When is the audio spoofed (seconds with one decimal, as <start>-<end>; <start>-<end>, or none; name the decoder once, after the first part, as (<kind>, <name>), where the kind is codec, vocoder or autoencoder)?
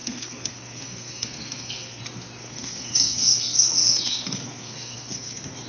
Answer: 0.0-2.0 (codec, SNAC); 2.4-5.7